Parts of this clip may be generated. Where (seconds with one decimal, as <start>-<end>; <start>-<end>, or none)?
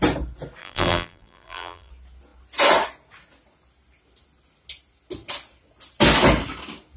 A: 0.6-1.9